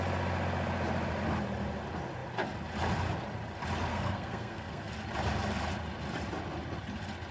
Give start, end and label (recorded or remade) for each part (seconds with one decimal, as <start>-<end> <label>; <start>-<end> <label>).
0.0-3.9 recorded; 3.9-4.9 remade; 4.9-7.3 recorded